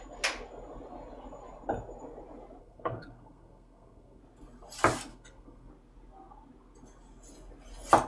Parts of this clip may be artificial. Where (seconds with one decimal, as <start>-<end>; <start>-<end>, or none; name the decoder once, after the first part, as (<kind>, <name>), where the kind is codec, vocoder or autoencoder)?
2.6-4.2 (codec, SNAC); 5.1-5.7